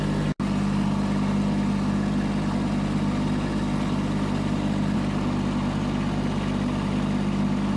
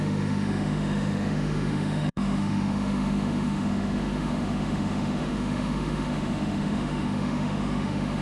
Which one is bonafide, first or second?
first